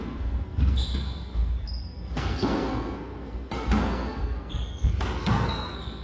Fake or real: fake